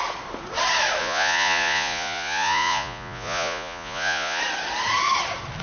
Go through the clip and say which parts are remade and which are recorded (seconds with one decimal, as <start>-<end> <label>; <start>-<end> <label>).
0.0-1.0 recorded; 1.0-4.4 remade; 4.4-5.6 recorded